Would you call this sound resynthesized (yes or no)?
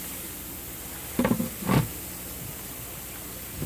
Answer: no